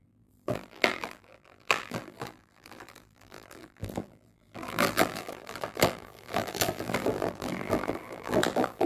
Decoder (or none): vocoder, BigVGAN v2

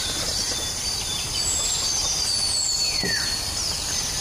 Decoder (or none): vocoder, BigVGAN v2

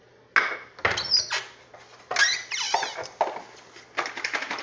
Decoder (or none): none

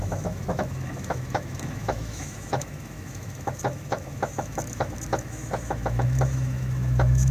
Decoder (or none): autoencoder, DAC-VAE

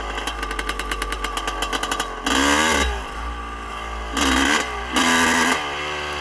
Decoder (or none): none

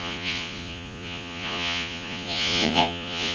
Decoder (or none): vocoder, Vocos